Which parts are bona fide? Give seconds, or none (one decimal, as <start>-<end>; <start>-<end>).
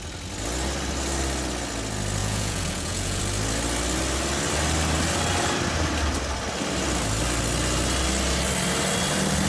0.0-2.2; 3.2-9.5